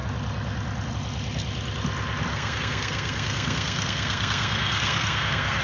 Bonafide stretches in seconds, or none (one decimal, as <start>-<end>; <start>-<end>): 0.0-2.3